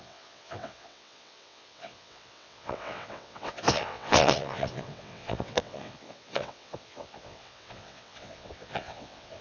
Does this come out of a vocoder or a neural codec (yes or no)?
yes